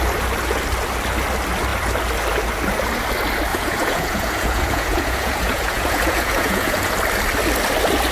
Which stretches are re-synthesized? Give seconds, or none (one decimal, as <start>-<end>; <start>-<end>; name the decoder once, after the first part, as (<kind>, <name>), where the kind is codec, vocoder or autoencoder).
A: 3.5-6.9 (vocoder, Vocos)